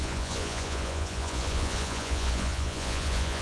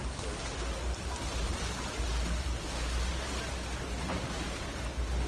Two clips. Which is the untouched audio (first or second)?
second